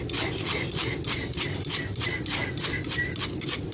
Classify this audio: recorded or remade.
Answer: recorded